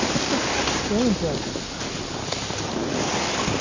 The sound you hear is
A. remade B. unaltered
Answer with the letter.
B